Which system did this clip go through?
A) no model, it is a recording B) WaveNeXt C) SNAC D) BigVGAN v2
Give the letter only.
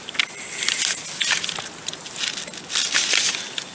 A